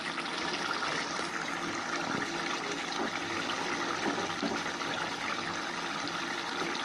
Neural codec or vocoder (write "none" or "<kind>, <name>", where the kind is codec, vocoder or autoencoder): none